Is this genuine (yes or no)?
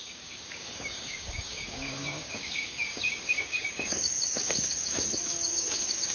no